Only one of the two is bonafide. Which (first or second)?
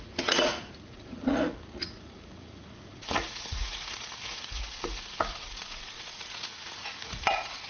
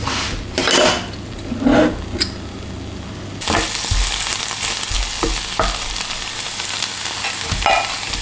second